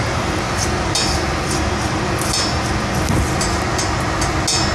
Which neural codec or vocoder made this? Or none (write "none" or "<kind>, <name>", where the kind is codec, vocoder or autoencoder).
none